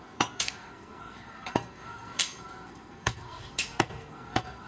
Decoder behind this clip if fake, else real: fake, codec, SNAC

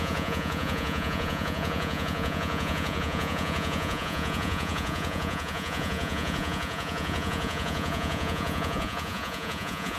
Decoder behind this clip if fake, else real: fake, vocoder, Vocos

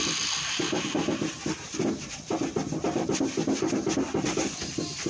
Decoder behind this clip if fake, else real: real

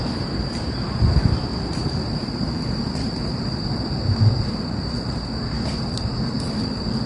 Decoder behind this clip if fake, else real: fake, vocoder, BigVGAN v2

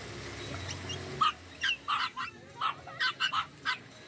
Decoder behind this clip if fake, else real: real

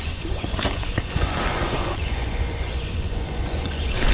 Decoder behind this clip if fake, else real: fake, vocoder, Vocos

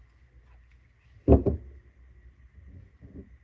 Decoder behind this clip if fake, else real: real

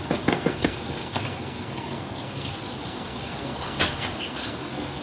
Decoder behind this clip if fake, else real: fake, codec, SNAC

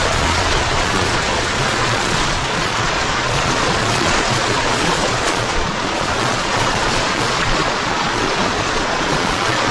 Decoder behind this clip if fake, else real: fake, vocoder, Vocos